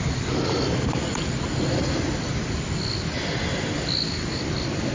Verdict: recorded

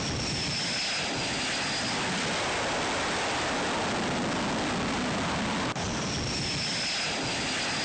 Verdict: recorded